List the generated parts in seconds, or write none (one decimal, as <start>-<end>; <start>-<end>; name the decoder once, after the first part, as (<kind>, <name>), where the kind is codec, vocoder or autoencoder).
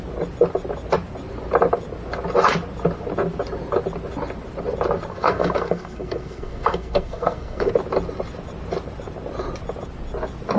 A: 5.1-7.7 (codec, SNAC)